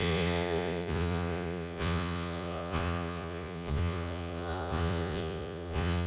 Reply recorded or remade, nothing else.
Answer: remade